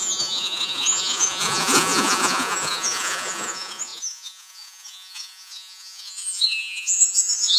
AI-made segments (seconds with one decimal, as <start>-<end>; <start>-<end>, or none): 0.0-7.6